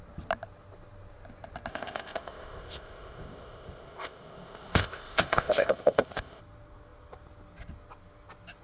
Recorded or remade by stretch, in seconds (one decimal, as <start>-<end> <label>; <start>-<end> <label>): 0.0-1.7 recorded; 1.7-6.4 remade; 6.4-8.6 recorded